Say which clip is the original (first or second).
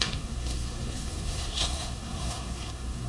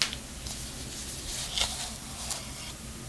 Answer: second